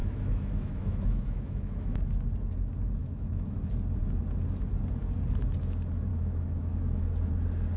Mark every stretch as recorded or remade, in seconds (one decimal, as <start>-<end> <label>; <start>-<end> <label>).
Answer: 0.0-2.1 remade; 2.1-3.0 recorded; 3.0-3.6 remade; 3.6-6.1 recorded; 6.1-7.3 remade; 7.3-7.8 recorded